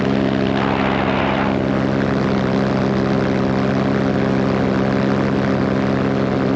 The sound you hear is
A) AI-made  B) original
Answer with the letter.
B